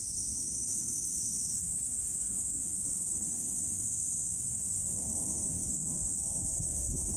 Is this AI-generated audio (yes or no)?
yes